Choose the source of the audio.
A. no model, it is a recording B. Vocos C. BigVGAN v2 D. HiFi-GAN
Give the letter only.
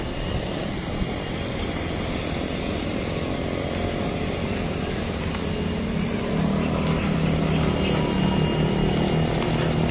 A